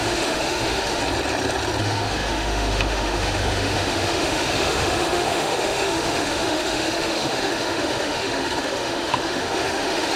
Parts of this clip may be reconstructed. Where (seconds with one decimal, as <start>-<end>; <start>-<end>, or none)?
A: 0.0-1.0; 1.8-10.2